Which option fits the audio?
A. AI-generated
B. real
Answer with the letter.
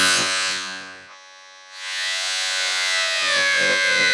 A